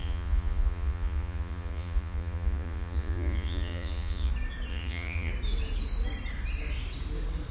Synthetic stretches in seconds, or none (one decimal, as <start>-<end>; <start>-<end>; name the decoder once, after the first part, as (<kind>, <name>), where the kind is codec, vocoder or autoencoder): 0.0-4.3 (vocoder, Vocos); 4.7-5.3